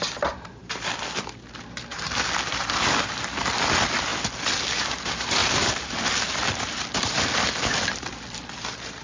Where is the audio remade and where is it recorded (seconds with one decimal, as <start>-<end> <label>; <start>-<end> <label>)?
0.0-1.9 remade; 1.9-2.5 recorded; 2.5-4.1 remade; 4.1-4.7 recorded; 4.7-5.4 remade; 5.4-6.1 recorded; 6.1-9.0 remade